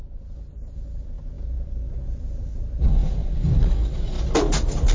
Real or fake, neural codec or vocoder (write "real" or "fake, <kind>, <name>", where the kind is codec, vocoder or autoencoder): real